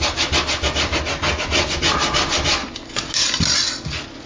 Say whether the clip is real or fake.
real